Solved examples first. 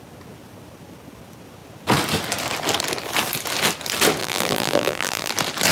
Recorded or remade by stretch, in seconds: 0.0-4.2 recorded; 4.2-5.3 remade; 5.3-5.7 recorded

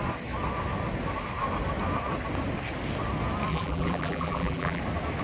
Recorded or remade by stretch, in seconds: 0.0-3.5 recorded; 3.5-4.8 remade; 4.8-5.2 recorded

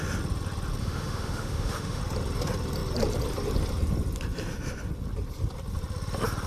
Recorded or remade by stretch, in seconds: 0.0-0.8 recorded; 0.8-2.0 remade; 2.0-6.5 recorded

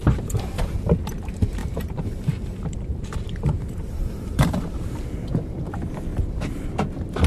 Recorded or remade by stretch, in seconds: 0.0-0.6 remade; 0.6-1.6 recorded; 1.6-5.0 remade; 5.0-6.1 recorded; 6.1-6.7 remade; 6.7-7.3 recorded